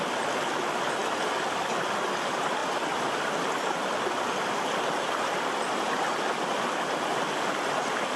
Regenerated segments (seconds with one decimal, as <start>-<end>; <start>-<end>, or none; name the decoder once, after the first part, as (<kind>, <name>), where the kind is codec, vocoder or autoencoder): 1.0-1.6 (vocoder, BigVGAN v2)